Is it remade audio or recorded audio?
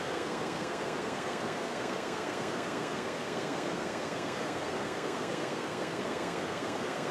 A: remade